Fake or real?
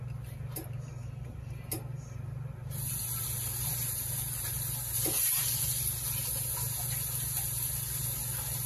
real